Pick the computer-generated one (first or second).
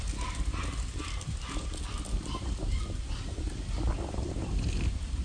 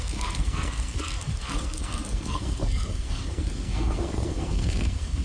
second